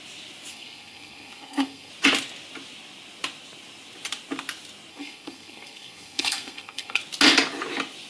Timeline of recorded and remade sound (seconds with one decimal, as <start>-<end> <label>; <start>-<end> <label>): 0.0-0.5 recorded; 0.5-1.9 remade; 1.9-4.9 recorded; 4.9-7.0 remade; 7.0-8.1 recorded